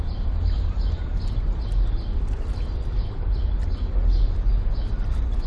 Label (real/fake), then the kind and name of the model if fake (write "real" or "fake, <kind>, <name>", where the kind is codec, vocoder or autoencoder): real